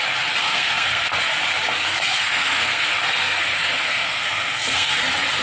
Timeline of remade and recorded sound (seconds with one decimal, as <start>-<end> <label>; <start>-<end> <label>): 0.0-0.4 recorded; 0.4-1.1 remade; 1.1-1.8 recorded; 1.8-5.0 remade; 5.0-5.4 recorded